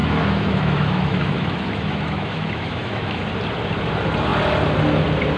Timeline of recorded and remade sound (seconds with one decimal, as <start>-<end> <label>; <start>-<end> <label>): 0.0-3.2 remade; 3.2-5.4 recorded